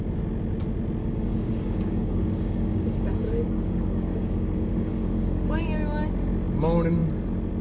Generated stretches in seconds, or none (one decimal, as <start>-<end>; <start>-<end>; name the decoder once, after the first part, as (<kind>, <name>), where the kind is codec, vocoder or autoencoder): 1.0-5.6 (codec, DAC)